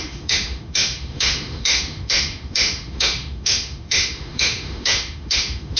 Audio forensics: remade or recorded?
remade